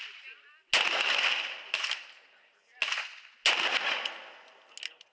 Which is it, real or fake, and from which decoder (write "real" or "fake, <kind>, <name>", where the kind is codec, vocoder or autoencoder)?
real